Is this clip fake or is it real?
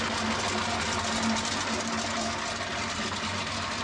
real